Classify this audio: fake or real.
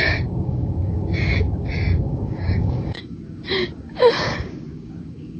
fake